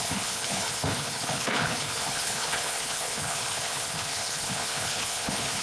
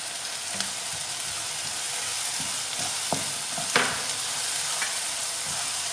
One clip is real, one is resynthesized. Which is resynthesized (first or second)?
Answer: first